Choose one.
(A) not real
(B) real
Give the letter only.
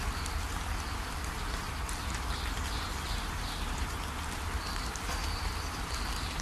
B